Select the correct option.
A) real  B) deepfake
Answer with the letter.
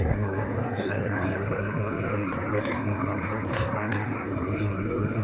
B